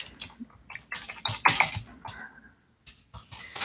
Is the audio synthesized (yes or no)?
no